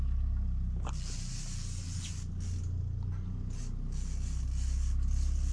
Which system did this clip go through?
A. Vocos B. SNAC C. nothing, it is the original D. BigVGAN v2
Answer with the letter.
C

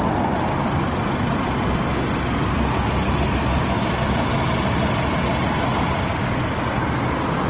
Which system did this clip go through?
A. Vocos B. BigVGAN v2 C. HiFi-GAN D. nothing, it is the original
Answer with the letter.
D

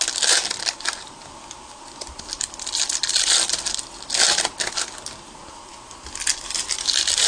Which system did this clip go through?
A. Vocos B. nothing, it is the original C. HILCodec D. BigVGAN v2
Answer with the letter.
B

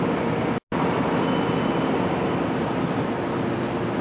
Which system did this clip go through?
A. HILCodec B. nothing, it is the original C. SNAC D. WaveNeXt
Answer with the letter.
B